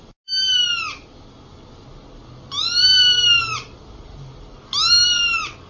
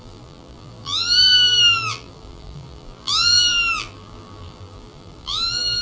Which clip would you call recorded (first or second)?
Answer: first